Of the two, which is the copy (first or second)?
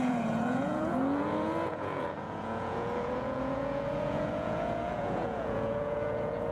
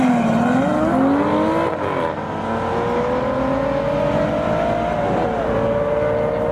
first